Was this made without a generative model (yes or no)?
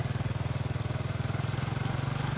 yes